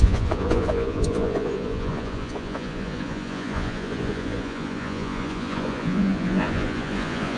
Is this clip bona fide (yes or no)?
no